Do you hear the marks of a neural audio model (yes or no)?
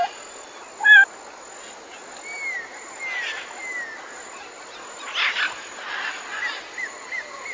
no